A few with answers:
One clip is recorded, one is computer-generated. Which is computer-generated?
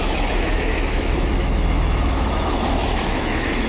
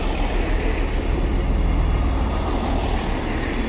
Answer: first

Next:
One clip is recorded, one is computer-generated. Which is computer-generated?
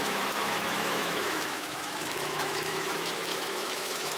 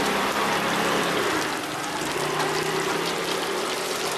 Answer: first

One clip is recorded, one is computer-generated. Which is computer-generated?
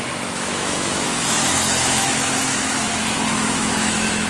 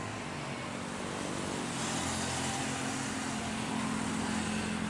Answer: first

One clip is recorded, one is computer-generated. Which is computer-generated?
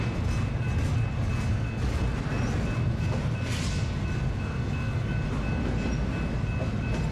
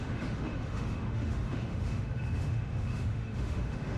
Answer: second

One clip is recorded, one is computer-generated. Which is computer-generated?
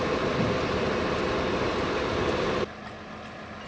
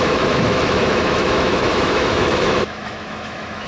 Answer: second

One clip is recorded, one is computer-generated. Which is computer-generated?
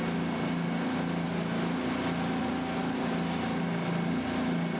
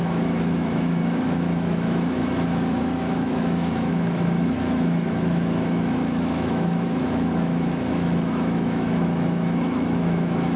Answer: second